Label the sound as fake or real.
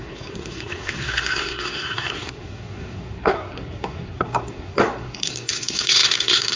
fake